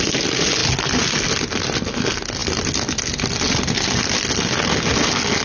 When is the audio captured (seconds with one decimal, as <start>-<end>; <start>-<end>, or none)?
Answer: 0.0-5.4